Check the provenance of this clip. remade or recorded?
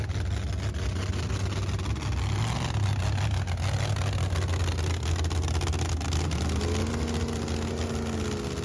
recorded